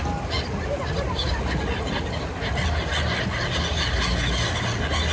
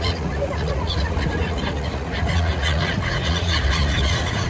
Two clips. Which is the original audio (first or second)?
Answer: first